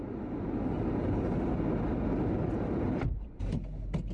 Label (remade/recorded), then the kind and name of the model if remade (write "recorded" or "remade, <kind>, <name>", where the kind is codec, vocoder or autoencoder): recorded